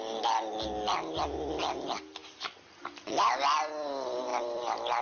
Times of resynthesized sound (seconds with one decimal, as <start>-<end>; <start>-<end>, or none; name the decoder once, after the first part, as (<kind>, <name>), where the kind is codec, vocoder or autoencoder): none